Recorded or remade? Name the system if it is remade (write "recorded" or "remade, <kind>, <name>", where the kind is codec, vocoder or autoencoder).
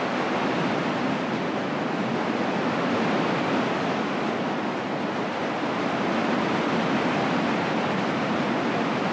recorded